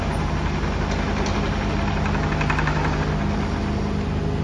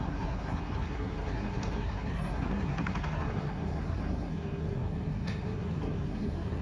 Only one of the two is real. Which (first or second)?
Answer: first